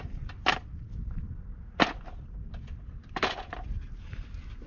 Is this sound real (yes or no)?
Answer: yes